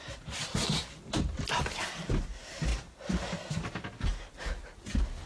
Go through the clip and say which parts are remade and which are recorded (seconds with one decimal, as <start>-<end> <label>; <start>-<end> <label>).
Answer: 0.0-5.3 recorded